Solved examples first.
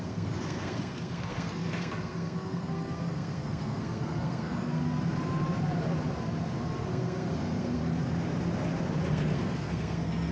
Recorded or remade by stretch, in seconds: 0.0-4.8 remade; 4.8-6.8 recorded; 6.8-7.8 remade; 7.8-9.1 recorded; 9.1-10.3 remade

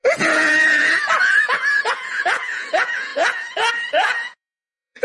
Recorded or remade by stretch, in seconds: 0.0-5.0 remade

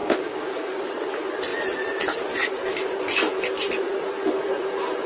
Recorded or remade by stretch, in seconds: 0.0-0.9 remade; 0.9-5.1 recorded

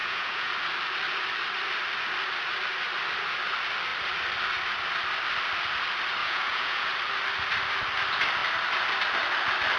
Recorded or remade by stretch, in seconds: 0.0-0.5 remade; 0.5-6.2 recorded; 6.2-6.9 remade; 6.9-9.8 recorded

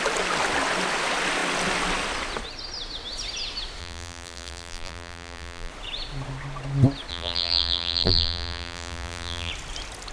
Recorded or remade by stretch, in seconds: 0.0-3.8 recorded; 3.8-5.7 remade; 5.7-7.1 recorded; 7.1-9.5 remade; 9.5-10.1 recorded

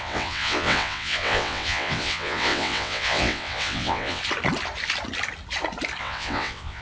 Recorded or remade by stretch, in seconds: 0.0-4.2 remade; 4.2-6.0 recorded; 6.0-6.8 remade

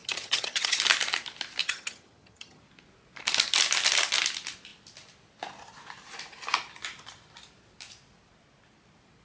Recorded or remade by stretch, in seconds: 0.0-0.8 remade; 0.8-1.6 recorded; 1.6-2.6 remade; 2.6-9.2 recorded